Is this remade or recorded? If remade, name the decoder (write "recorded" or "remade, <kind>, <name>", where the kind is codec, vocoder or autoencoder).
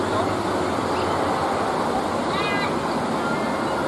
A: recorded